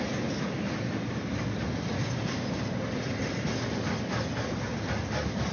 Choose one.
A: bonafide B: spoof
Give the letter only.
A